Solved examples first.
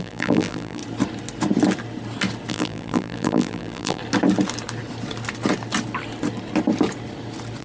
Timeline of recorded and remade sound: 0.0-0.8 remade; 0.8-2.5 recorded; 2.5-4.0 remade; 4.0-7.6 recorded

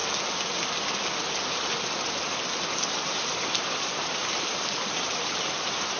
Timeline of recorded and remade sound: 0.0-2.7 recorded; 2.7-6.0 remade

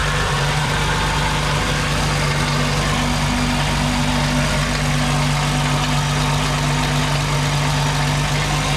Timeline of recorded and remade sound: 0.0-2.0 remade; 2.0-8.8 recorded

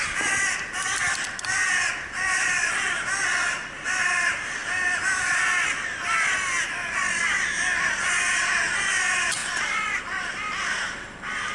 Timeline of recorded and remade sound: 0.0-11.5 recorded